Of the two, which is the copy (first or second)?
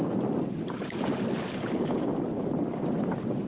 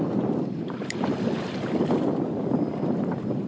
second